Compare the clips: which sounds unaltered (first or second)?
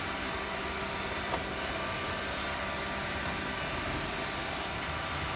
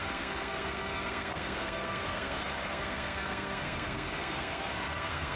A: first